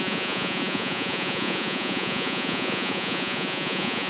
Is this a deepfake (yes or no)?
yes